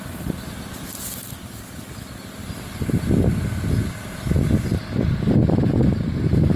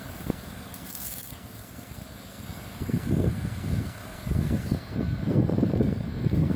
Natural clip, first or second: first